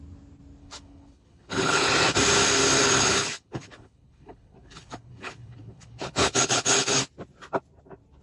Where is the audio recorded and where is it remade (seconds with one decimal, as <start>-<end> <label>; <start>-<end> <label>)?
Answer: 0.0-0.6 recorded; 0.6-1.9 remade; 1.9-2.8 recorded; 2.8-7.0 remade; 7.0-8.2 recorded